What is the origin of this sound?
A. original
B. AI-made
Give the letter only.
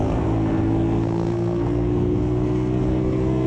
B